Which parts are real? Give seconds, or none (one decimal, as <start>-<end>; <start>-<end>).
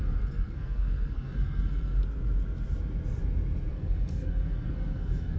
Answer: 2.0-3.7